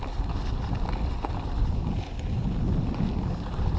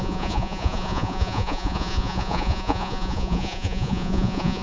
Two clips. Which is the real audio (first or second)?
first